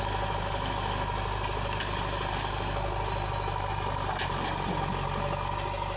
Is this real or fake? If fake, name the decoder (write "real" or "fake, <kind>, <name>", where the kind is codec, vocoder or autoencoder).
real